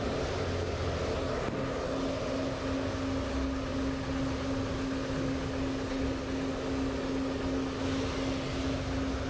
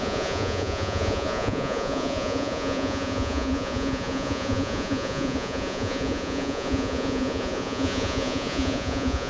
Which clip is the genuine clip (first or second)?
first